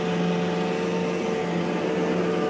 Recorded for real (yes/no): yes